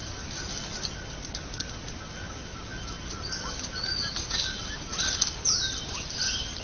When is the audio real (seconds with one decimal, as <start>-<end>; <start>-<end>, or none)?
0.0-6.6